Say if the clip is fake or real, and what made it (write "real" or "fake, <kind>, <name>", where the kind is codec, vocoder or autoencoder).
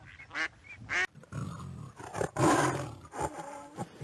real